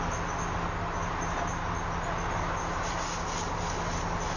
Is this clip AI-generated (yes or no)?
no